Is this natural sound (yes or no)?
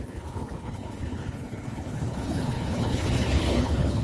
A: no